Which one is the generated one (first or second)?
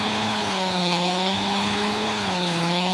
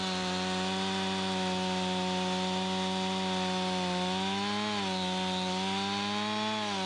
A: first